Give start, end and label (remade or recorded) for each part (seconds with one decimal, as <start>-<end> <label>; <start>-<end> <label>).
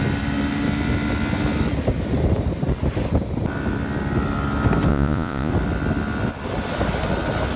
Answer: 0.0-4.9 recorded; 4.9-5.5 remade; 5.5-7.6 recorded